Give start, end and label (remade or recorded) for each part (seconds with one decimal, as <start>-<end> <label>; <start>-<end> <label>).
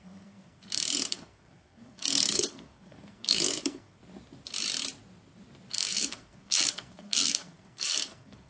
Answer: 0.0-4.0 remade; 4.0-5.7 recorded; 5.7-8.5 remade